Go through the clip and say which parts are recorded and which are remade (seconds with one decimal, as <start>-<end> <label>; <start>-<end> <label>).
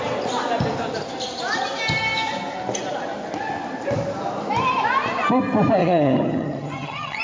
0.0-5.8 recorded; 5.8-7.2 remade